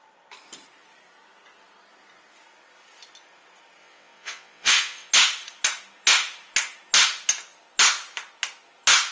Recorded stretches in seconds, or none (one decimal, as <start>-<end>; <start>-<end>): 0.0-3.8; 5.1-9.1